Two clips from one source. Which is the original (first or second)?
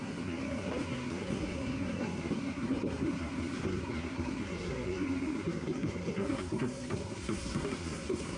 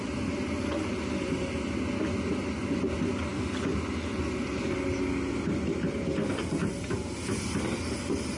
second